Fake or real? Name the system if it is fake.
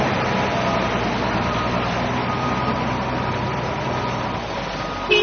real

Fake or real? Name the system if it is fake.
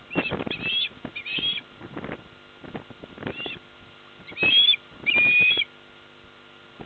real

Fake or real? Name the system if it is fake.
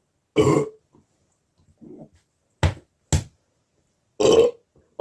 real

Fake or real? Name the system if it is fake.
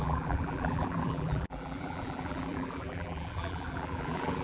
fake, vocoder, BigVGAN v2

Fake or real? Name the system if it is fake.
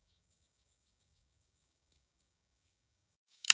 fake, codec, DAC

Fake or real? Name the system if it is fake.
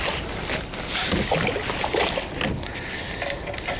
real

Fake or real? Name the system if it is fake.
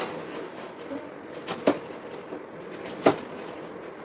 real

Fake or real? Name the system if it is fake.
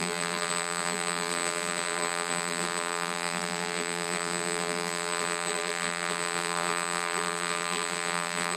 fake, vocoder, BigVGAN v2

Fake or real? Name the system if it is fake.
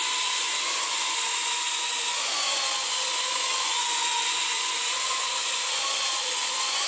fake, vocoder, Vocos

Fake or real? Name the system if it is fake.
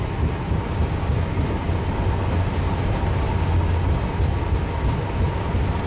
real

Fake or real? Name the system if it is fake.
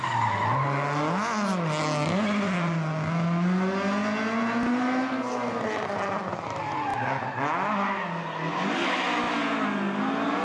real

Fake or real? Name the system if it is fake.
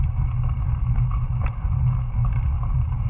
real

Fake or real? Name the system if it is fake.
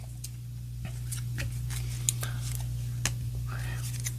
real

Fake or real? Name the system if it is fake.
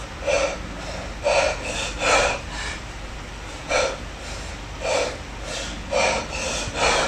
real